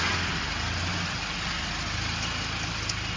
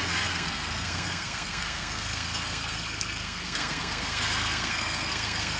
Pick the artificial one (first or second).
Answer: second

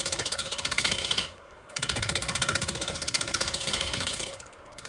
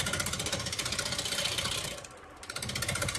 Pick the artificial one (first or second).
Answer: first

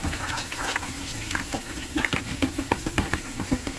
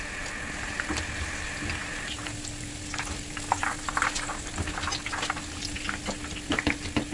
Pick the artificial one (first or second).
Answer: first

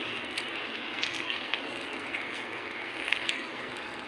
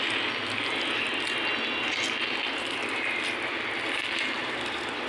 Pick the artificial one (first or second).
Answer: first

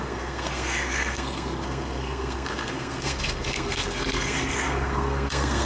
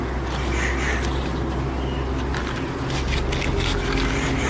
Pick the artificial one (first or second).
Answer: first